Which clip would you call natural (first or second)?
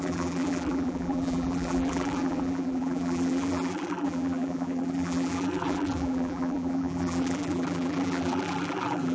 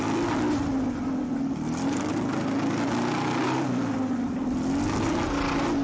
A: second